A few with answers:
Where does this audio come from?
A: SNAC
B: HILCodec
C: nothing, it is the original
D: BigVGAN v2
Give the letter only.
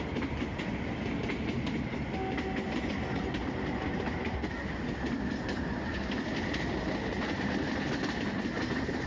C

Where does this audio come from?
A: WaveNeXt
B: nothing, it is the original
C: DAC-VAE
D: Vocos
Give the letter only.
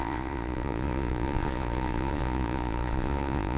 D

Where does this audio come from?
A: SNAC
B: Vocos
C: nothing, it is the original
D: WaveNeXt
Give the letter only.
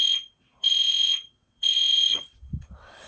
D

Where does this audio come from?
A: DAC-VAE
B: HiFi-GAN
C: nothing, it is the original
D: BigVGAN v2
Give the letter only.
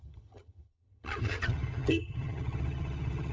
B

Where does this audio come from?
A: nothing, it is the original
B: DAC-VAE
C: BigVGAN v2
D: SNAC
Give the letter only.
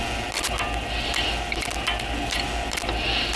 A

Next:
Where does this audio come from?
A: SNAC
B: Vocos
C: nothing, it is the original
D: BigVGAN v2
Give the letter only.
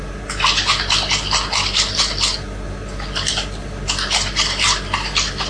C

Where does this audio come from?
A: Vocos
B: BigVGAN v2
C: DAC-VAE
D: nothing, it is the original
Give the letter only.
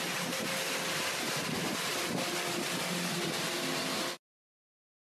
D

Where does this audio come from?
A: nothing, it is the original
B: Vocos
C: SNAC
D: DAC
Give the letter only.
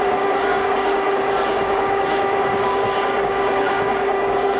D